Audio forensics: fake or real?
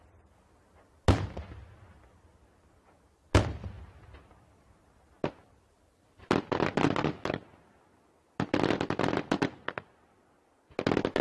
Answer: real